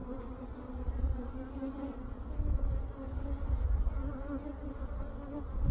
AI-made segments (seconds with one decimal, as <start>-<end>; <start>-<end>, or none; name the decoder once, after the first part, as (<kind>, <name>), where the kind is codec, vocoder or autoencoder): none